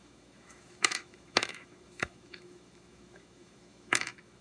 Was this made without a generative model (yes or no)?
no